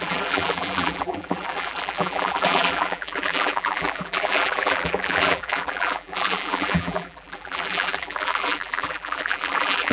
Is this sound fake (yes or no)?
yes